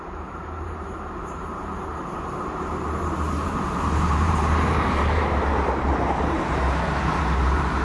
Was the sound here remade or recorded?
remade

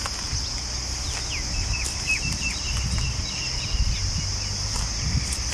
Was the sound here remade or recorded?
recorded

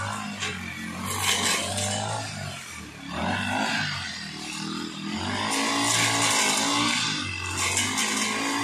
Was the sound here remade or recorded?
recorded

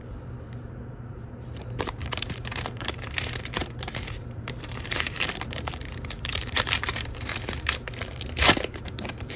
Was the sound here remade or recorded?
remade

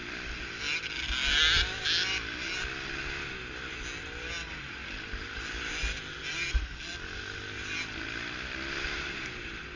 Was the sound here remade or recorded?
recorded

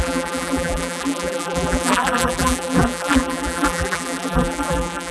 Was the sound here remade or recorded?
remade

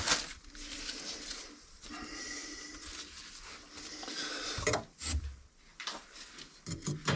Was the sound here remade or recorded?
recorded